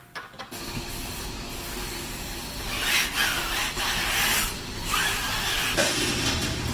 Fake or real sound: real